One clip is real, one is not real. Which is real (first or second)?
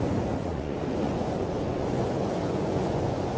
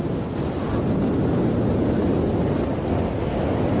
second